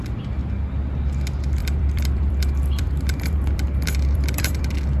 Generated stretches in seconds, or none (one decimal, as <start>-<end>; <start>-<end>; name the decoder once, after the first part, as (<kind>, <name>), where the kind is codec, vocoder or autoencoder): 1.6-4.6 (vocoder, BigVGAN v2)